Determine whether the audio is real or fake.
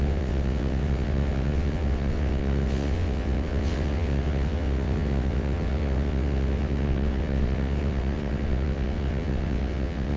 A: fake